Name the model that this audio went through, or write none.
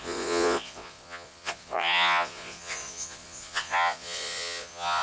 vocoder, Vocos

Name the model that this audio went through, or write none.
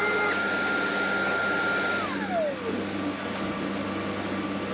none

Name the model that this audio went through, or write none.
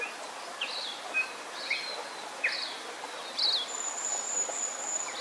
none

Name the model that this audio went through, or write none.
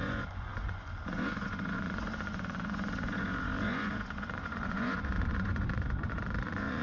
vocoder, Vocos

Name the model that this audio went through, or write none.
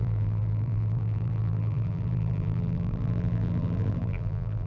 vocoder, BigVGAN v2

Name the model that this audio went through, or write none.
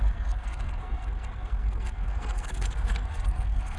codec, SNAC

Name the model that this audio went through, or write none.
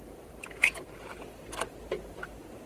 none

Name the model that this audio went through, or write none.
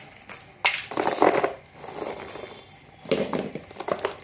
none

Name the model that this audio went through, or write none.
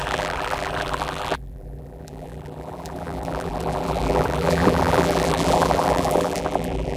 vocoder, BigVGAN v2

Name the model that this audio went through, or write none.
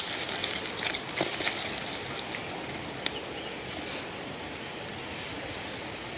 none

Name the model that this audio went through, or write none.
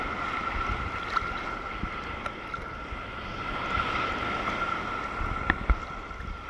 none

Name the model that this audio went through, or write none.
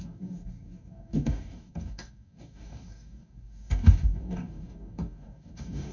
codec, DAC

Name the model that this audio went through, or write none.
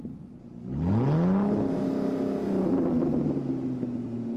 none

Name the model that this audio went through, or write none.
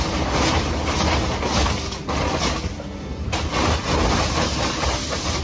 none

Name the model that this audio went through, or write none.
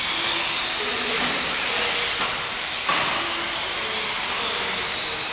none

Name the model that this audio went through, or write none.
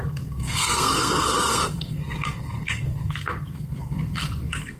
codec, SNAC